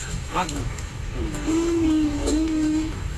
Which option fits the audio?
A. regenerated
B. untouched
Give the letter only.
A